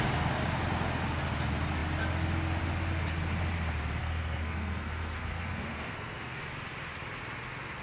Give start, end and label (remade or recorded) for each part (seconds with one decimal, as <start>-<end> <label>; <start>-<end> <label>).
0.0-4.0 recorded; 4.0-6.4 remade; 6.4-7.8 recorded